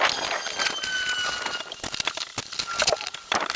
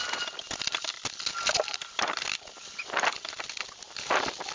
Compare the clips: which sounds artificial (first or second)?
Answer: second